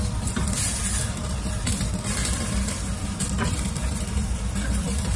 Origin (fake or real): fake